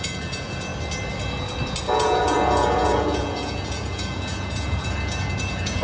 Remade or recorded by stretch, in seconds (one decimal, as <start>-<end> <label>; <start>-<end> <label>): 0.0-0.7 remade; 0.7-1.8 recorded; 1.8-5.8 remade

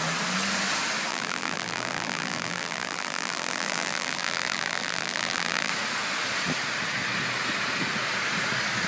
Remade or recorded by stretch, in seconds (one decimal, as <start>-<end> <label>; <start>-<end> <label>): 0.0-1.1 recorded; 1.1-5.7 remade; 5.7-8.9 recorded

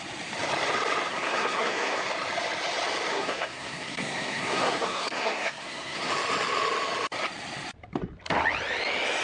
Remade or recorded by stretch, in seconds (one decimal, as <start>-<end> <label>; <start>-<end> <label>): 0.0-1.1 recorded; 1.1-2.1 remade; 2.1-3.1 recorded; 3.1-6.1 remade; 6.1-9.2 recorded